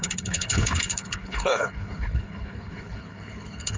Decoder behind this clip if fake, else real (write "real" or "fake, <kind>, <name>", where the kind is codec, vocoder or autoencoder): fake, codec, HILCodec